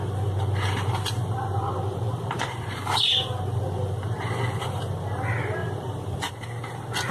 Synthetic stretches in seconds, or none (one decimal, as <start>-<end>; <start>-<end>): 1.9-3.2; 5.6-6.3

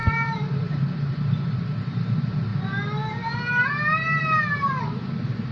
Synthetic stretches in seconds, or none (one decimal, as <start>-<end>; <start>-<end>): 0.0-2.5; 4.5-5.5

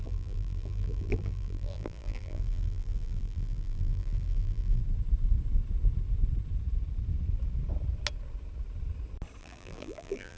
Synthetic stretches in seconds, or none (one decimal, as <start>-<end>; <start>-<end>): 0.0-4.8; 9.4-10.4

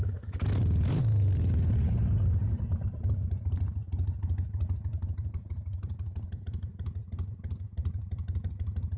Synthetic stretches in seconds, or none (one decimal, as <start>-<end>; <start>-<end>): 1.0-3.4; 4.9-6.4; 7.8-8.5

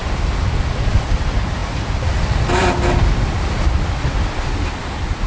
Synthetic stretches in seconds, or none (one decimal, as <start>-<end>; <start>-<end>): none

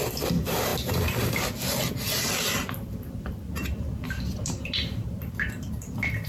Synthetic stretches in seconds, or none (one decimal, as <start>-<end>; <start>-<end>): 0.0-6.3

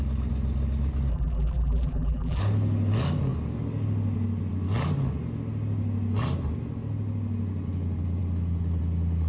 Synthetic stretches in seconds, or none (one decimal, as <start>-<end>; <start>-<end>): 1.1-2.4

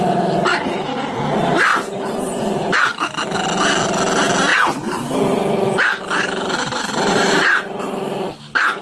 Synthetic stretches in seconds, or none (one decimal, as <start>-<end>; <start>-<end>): 1.7-2.4; 4.5-5.1; 6.2-7.6